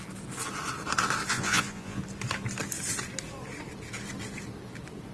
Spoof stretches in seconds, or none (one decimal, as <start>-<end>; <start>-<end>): 1.3-2.0